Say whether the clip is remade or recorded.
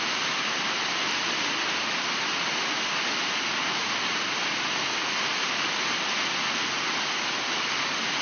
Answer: recorded